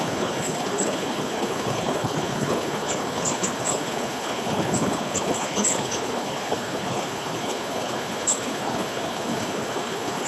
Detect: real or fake fake